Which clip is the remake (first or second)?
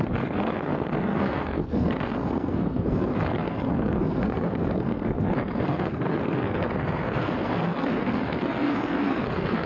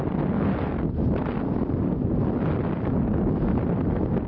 first